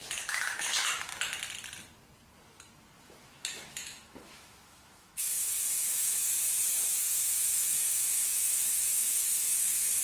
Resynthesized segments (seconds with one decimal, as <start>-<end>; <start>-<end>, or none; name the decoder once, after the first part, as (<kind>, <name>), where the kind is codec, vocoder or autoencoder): 0.0-1.1 (autoencoder, DAC-VAE); 3.0-6.3; 7.0-10.0

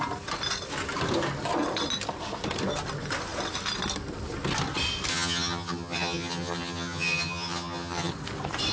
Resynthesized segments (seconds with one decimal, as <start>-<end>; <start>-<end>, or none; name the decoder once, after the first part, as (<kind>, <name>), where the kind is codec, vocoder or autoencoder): 5.1-8.1 (vocoder, HiFi-GAN)

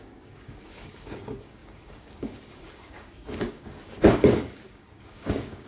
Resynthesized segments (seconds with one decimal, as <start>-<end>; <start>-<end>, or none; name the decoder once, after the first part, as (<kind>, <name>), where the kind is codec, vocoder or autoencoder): 0.0-5.7 (codec, DAC)

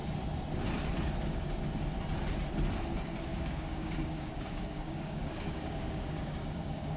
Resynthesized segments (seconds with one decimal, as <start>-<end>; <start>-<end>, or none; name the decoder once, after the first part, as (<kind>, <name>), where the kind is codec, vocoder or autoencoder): 3.3-7.0 (codec, DAC)

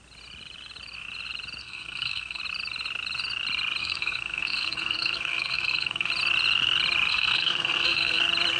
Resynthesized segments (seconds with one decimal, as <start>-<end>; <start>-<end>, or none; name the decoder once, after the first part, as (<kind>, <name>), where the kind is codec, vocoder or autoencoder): 1.6-2.4 (codec, SNAC); 3.8-6.1; 7.1-8.2

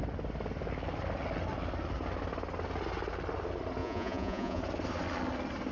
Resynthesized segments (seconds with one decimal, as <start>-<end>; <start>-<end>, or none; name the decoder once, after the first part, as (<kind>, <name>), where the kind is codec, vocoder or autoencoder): 3.8-4.6 (vocoder, Vocos)

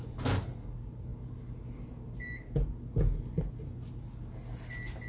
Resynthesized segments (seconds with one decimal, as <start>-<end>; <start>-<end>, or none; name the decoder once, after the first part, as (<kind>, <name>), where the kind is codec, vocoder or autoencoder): none

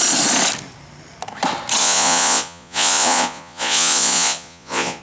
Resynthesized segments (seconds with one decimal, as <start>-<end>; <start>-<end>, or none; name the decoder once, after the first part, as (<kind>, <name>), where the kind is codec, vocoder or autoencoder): 1.8-5.0 (vocoder, Vocos)